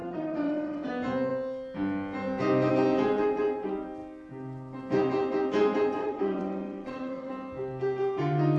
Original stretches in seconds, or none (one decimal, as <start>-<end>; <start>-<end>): 0.9-6.0; 7.3-8.6